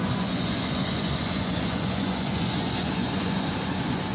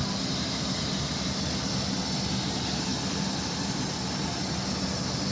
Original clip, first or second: second